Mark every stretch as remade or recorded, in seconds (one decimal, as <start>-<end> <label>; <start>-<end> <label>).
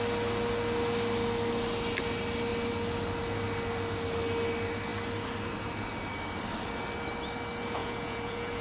0.0-7.8 recorded; 7.8-8.6 remade